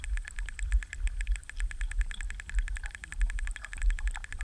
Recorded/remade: recorded